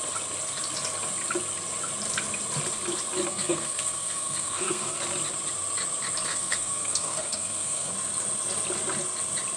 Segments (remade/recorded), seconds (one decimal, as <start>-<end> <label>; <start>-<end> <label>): 0.0-3.3 recorded; 3.3-5.0 remade; 5.0-6.3 recorded; 6.3-7.9 remade; 7.9-9.6 recorded